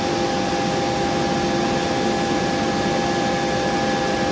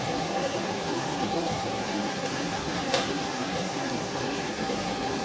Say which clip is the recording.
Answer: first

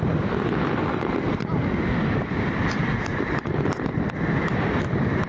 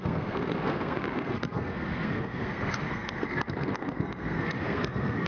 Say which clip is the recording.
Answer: first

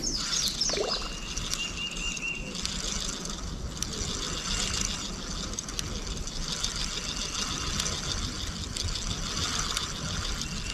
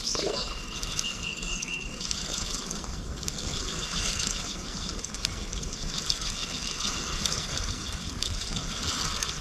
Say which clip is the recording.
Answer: first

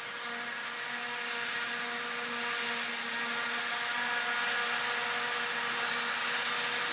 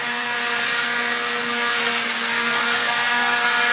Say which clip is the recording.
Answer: first